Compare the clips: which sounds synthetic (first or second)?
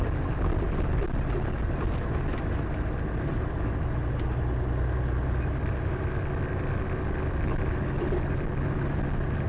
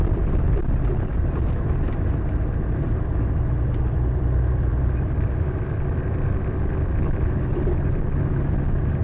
second